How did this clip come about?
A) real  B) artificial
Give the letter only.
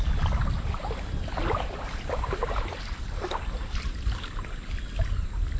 B